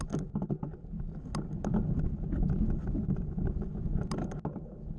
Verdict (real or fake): real